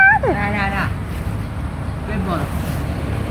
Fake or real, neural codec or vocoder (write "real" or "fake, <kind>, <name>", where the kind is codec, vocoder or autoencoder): real